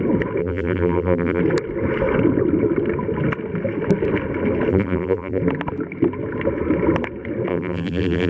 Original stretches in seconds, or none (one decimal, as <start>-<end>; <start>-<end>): 0.0-0.4; 1.4-4.7; 5.4-7.5